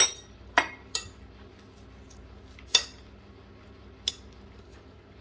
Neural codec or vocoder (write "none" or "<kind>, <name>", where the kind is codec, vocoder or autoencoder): none